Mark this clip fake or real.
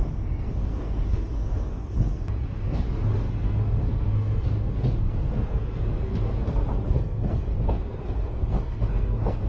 fake